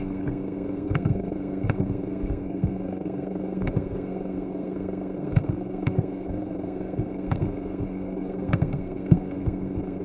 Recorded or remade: remade